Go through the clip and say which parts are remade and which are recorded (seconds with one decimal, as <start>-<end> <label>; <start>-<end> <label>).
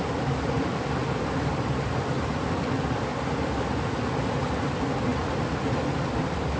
0.0-1.0 recorded; 1.0-2.6 remade; 2.6-6.6 recorded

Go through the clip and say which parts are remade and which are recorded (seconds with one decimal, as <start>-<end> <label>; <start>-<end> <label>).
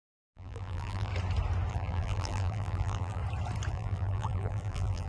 0.0-1.1 remade; 1.1-1.7 recorded; 1.7-3.2 remade; 3.2-3.7 recorded; 3.7-5.1 remade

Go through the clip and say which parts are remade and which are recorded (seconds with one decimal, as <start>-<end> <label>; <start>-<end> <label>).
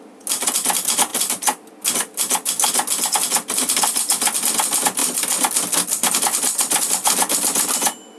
0.0-1.1 recorded; 1.1-1.7 remade; 1.7-5.0 recorded; 5.0-8.2 remade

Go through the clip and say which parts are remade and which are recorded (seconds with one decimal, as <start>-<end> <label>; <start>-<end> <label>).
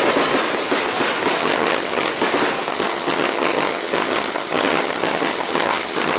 0.0-1.4 recorded; 1.4-2.1 remade; 2.1-2.7 recorded; 2.7-6.2 remade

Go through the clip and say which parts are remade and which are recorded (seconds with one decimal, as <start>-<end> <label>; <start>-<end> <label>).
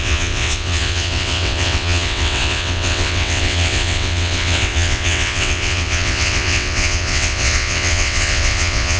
0.0-9.0 remade